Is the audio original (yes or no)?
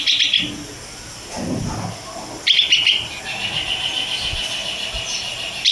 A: yes